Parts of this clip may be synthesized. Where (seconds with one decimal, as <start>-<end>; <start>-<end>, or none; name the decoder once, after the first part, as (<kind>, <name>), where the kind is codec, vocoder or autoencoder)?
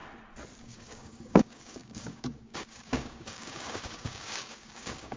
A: 0.6-5.2 (codec, DAC)